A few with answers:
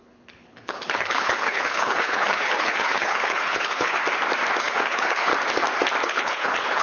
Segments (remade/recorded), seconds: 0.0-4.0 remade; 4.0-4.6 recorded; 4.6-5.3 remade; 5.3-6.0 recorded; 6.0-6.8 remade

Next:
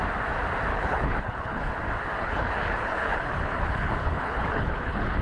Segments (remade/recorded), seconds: 0.0-0.7 recorded; 0.7-1.7 remade; 1.7-2.2 recorded; 2.2-5.2 remade

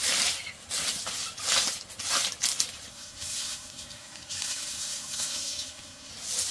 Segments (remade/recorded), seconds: 0.0-2.9 recorded; 2.9-6.1 remade; 6.1-6.5 recorded

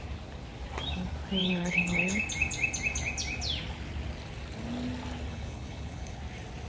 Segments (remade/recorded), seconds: 0.0-1.4 recorded; 1.4-2.2 remade; 2.2-5.3 recorded; 5.3-6.2 remade; 6.2-6.7 recorded

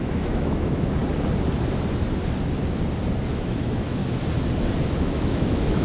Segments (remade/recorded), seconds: 0.0-1.0 remade; 1.0-3.3 recorded; 3.3-4.0 remade; 4.0-4.9 recorded; 4.9-5.8 remade